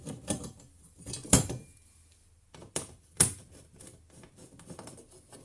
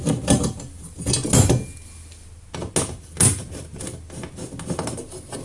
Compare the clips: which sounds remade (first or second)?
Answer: first